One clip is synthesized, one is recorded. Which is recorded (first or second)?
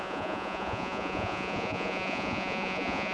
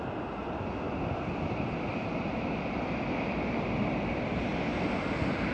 second